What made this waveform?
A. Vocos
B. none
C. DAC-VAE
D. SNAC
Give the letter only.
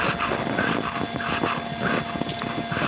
B